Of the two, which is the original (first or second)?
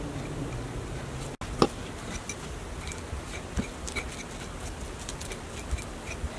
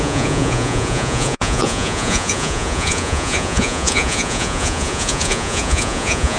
first